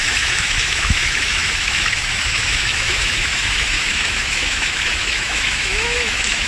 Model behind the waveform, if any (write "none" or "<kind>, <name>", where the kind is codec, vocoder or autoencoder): autoencoder, DAC-VAE